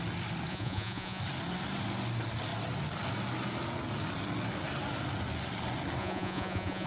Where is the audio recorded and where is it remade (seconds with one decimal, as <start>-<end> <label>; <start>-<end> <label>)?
0.0-0.5 recorded; 0.5-1.2 remade; 1.2-6.0 recorded; 6.0-6.9 remade